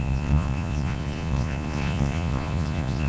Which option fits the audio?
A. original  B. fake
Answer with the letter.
B